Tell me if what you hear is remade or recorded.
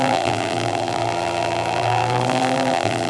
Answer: remade